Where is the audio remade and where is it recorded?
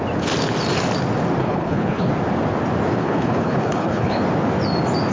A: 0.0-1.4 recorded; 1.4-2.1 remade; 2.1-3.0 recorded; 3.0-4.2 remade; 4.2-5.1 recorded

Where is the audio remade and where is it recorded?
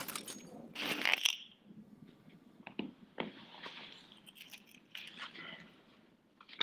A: 0.0-1.8 recorded; 1.8-2.6 remade; 2.6-6.6 recorded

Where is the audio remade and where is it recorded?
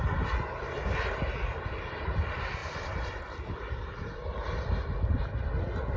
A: 0.0-2.6 recorded; 2.6-3.6 remade; 3.6-6.0 recorded